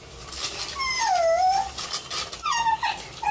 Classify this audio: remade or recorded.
recorded